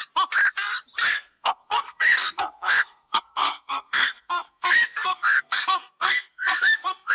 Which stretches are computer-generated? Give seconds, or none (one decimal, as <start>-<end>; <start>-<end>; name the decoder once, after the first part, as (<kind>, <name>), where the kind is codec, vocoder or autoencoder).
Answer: 1.1-7.1 (codec, SNAC)